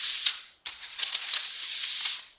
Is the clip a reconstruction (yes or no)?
yes